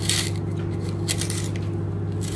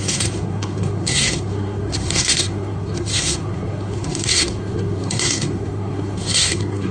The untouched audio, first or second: first